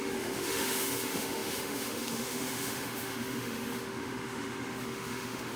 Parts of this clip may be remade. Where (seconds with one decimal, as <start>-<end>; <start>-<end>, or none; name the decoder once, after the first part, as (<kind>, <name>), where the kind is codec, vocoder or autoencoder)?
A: 0.0-5.6 (autoencoder, DAC-VAE)